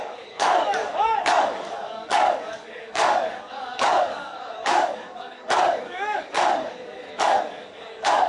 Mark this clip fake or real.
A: fake